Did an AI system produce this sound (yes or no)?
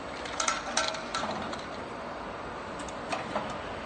no